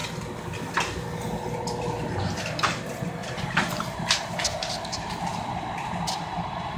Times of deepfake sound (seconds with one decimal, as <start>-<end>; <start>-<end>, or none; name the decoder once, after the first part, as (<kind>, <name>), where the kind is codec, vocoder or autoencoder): 1.9-5.3 (vocoder, BigVGAN v2); 6.2-6.8